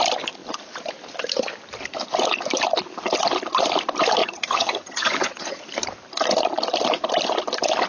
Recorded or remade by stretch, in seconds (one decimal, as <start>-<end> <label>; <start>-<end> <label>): 0.0-4.2 recorded; 4.2-5.6 remade; 5.6-7.9 recorded